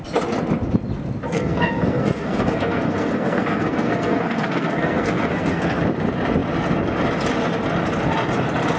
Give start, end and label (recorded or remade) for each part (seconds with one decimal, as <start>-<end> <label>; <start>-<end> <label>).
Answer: 0.0-1.3 recorded; 1.3-5.8 remade; 5.8-8.8 recorded